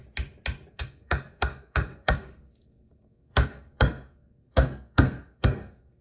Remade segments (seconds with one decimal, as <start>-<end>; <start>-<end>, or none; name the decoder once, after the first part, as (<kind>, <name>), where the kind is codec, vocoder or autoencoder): 0.7-6.0 (codec, SNAC)